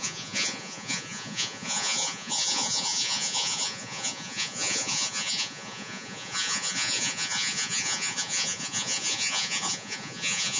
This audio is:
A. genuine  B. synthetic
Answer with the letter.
B